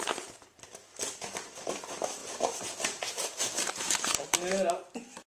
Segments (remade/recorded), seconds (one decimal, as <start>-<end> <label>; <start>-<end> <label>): 0.0-5.3 remade